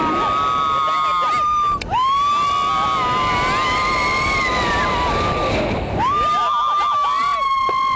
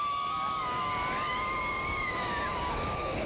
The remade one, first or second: second